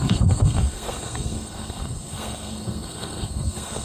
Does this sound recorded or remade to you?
remade